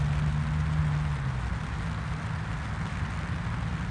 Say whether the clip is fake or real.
real